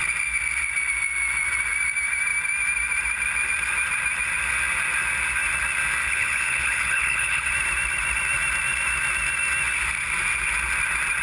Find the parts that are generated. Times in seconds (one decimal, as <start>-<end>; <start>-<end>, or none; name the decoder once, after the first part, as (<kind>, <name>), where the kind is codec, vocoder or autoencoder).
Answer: 6.0-7.5 (codec, HILCodec)